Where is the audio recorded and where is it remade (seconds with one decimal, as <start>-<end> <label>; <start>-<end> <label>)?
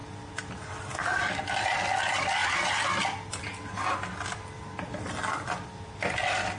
0.0-6.6 recorded